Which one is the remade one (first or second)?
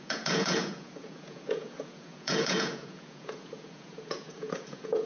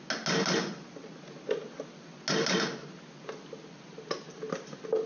first